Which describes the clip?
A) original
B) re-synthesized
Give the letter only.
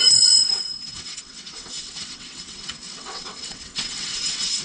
B